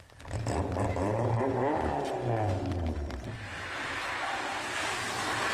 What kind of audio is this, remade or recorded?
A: remade